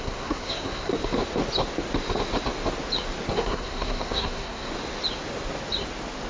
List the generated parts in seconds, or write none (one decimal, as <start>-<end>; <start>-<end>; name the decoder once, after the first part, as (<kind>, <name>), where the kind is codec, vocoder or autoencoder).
0.0-0.9 (codec, SNAC); 3.3-4.7